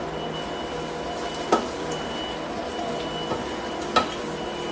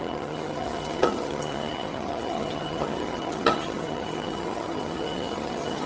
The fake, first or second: second